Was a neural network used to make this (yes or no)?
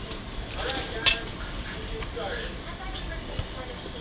no